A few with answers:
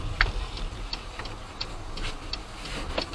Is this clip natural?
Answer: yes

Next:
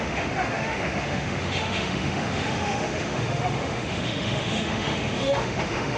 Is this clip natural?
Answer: no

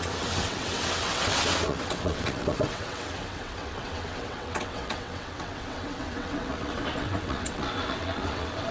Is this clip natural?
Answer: no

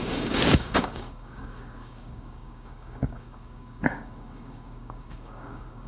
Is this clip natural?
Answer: no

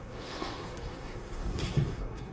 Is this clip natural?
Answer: no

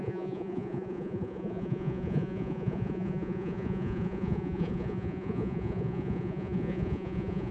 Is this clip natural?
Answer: no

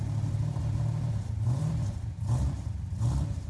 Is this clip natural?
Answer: no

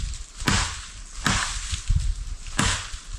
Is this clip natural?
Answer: yes